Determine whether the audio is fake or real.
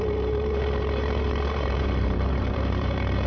fake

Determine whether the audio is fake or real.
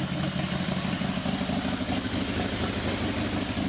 real